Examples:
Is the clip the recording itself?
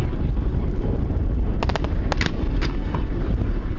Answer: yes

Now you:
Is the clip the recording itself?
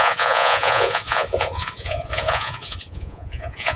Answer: no